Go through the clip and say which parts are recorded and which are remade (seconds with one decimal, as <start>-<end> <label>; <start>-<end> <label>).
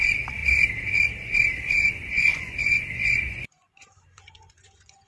0.0-0.4 remade; 0.4-1.6 recorded; 1.6-5.1 remade